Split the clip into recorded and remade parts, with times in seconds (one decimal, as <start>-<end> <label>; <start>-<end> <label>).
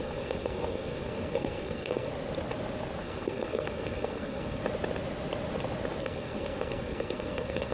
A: 0.0-2.1 remade; 2.1-3.0 recorded; 3.0-4.6 remade; 4.6-6.0 recorded; 6.0-7.7 remade